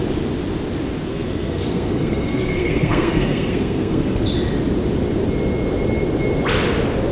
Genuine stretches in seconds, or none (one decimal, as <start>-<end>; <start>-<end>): 0.0-1.1; 4.2-7.1